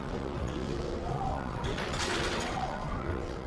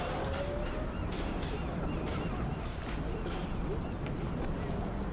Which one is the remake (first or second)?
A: first